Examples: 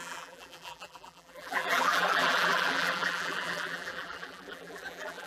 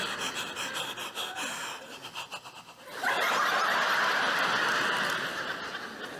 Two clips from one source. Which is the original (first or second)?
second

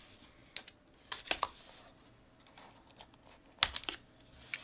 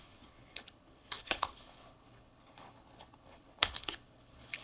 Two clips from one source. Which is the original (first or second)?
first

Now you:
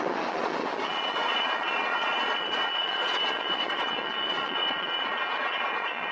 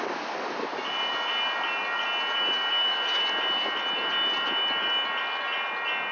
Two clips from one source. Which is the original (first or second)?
second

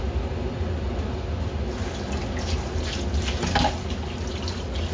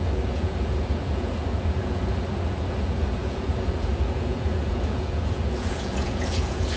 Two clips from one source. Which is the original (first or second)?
first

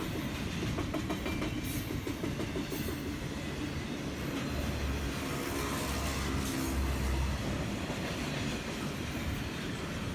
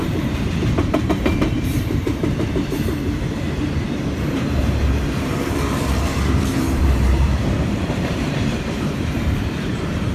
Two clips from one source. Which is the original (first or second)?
first